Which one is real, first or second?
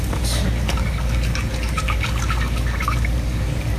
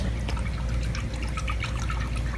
second